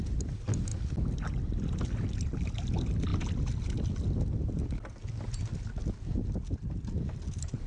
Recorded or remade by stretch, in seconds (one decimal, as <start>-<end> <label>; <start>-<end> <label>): 0.0-7.7 recorded